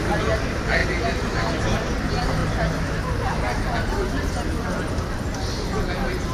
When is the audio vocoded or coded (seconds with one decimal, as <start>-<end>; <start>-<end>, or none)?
none